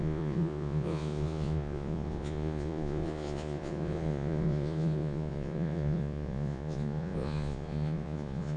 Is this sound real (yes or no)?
no